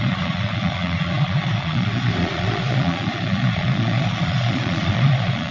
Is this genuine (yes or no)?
no